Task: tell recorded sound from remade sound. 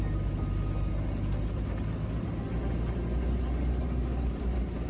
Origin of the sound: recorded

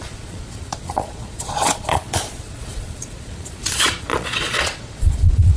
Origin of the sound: remade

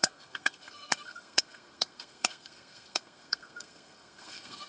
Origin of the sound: remade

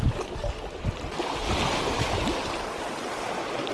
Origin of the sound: recorded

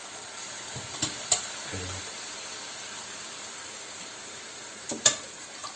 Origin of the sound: remade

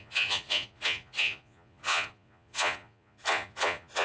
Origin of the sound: remade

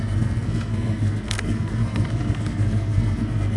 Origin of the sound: remade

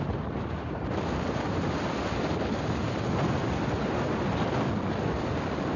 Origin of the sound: recorded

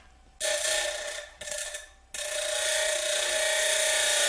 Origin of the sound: recorded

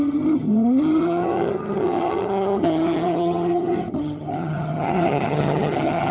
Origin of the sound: remade